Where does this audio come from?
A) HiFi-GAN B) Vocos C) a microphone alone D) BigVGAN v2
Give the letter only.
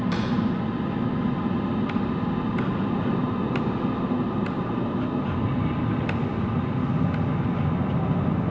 C